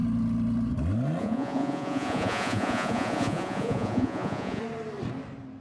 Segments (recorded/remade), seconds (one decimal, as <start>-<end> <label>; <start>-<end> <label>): 0.0-1.2 recorded; 1.2-4.6 remade; 4.6-5.6 recorded